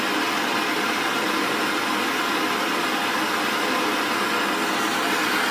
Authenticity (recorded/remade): recorded